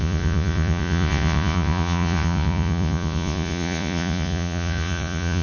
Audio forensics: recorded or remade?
remade